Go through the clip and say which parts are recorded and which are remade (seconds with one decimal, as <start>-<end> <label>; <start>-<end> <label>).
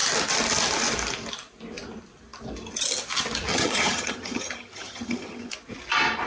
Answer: 0.0-3.5 recorded; 3.5-5.5 remade; 5.5-6.3 recorded